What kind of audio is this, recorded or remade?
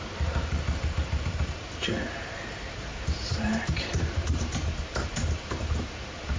remade